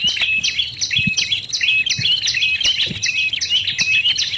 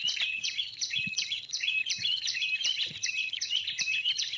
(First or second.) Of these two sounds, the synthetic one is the second